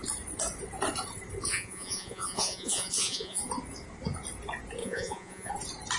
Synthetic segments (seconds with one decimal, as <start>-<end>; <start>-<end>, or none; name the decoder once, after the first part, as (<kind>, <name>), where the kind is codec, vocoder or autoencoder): 1.5-3.4 (vocoder, Vocos); 4.8-5.5